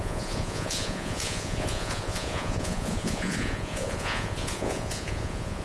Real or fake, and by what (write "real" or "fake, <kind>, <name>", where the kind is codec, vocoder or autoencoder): fake, vocoder, Vocos